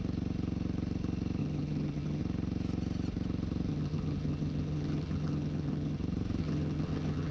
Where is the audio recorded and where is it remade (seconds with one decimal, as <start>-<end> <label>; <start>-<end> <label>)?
0.0-1.4 recorded; 1.4-2.2 remade; 2.2-3.7 recorded; 3.7-6.0 remade; 6.0-6.4 recorded; 6.4-7.3 remade